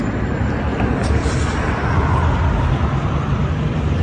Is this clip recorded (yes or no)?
no